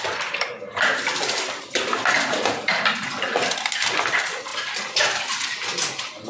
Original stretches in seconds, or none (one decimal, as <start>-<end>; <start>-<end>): 0.0-6.3